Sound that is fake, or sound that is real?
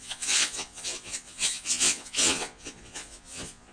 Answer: fake